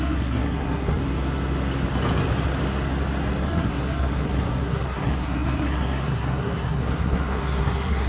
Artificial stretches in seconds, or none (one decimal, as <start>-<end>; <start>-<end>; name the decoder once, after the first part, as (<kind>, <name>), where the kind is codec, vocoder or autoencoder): 0.0-1.0 (codec, SNAC); 3.4-8.1